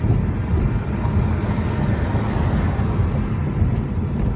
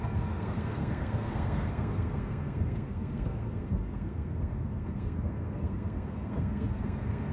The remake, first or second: second